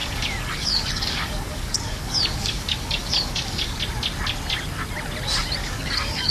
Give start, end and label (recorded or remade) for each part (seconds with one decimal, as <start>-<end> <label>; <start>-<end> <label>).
0.0-3.8 remade; 3.8-5.6 recorded; 5.6-6.3 remade